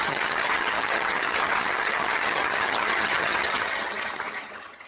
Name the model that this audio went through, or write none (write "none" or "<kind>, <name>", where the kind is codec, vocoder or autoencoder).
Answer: vocoder, HiFi-GAN